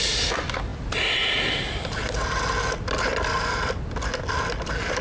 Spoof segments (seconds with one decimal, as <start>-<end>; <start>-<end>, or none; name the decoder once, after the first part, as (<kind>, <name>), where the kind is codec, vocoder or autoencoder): none